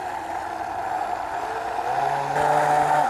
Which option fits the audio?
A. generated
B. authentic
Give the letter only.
B